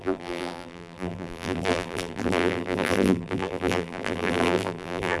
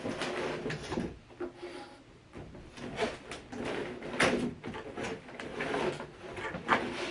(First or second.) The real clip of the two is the second